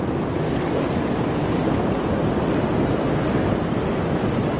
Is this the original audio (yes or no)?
yes